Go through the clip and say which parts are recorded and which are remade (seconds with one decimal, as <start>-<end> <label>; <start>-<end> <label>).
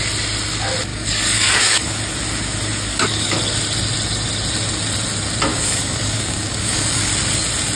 0.0-0.9 recorded; 0.9-2.0 remade; 2.0-2.9 recorded; 2.9-3.4 remade; 3.4-5.5 recorded; 5.5-7.1 remade; 7.1-7.8 recorded